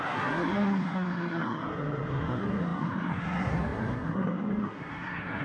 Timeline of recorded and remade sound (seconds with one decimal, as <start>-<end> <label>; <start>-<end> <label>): 0.0-5.4 remade